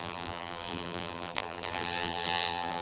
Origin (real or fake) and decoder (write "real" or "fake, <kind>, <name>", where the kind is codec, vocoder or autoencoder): fake, vocoder, BigVGAN v2